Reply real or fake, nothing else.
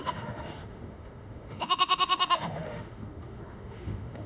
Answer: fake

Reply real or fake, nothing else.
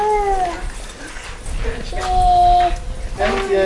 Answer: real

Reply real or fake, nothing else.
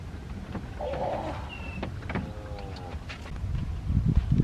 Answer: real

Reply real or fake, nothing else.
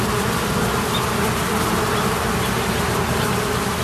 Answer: real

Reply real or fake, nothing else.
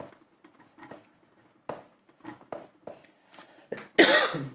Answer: real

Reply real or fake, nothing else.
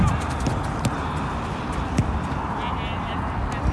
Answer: real